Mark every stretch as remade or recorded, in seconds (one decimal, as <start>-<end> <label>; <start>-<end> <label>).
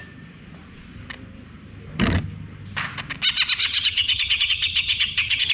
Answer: 0.0-3.6 recorded; 3.6-5.5 remade